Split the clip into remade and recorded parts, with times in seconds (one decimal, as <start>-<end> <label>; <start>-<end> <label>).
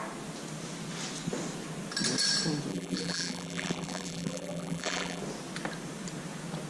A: 0.0-2.7 recorded; 2.7-5.2 remade; 5.2-6.7 recorded